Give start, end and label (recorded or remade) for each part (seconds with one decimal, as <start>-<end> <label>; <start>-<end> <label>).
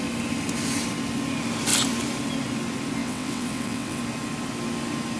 0.0-3.0 recorded; 3.0-4.0 remade; 4.0-5.2 recorded